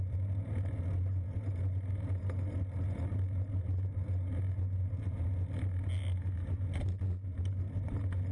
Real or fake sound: real